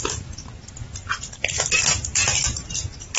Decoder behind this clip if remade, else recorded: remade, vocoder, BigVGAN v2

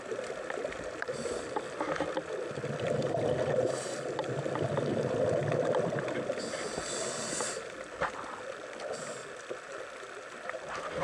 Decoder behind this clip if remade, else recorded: recorded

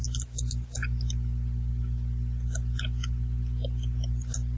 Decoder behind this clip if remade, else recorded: recorded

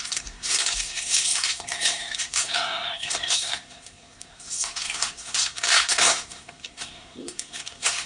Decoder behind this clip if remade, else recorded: remade, codec, SNAC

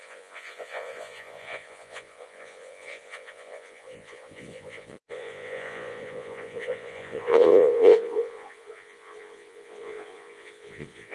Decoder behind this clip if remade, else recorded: remade, vocoder, Vocos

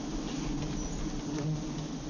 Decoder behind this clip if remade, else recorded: recorded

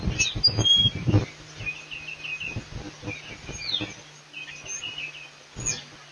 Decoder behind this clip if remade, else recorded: recorded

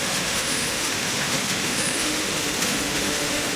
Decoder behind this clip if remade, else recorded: remade, autoencoder, DAC-VAE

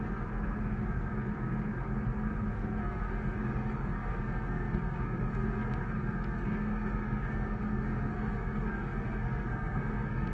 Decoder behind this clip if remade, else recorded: remade, codec, SNAC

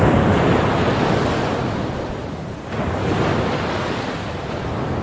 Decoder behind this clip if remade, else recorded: recorded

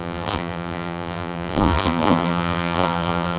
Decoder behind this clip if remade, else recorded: remade, vocoder, BigVGAN v2